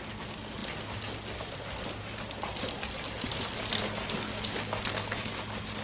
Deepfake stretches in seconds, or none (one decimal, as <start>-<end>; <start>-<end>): none